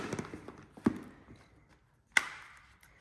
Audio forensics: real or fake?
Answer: real